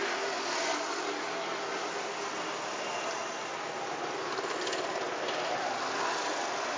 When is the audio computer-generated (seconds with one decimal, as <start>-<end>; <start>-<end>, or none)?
none